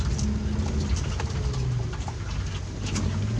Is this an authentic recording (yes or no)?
yes